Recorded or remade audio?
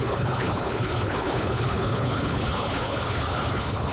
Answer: remade